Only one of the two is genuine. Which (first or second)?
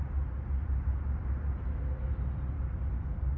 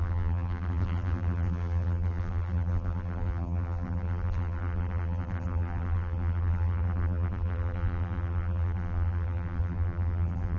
first